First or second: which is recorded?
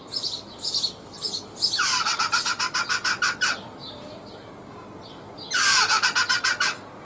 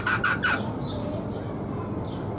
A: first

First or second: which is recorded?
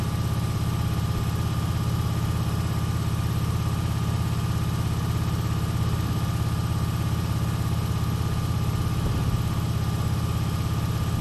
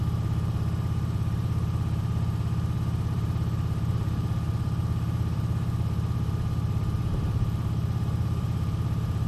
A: first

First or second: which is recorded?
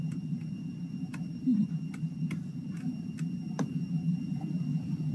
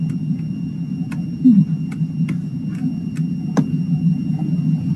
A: second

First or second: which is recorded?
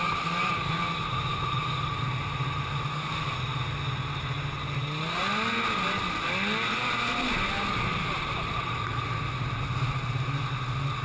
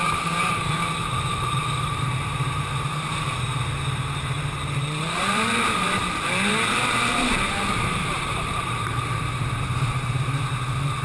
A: first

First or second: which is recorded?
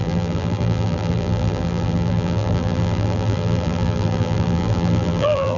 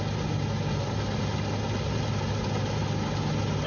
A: second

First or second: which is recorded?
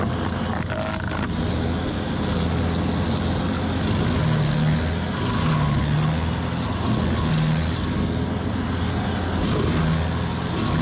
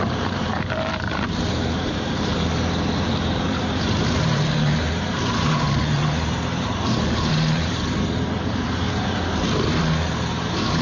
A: first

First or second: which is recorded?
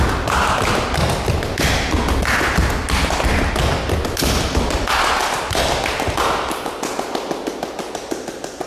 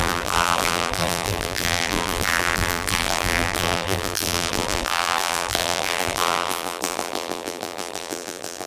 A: first